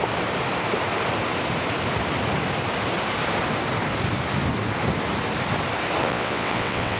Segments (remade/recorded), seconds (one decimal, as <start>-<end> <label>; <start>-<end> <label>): 0.0-6.0 recorded; 6.0-7.0 remade